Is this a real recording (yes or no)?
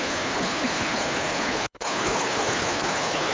no